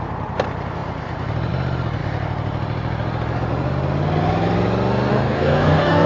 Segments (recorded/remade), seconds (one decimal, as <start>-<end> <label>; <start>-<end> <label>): 0.0-5.1 recorded; 5.1-6.1 remade